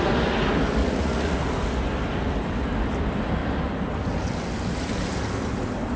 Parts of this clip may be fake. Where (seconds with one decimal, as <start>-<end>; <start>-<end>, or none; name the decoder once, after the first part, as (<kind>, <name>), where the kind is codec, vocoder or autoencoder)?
0.8-1.4 (vocoder, Vocos)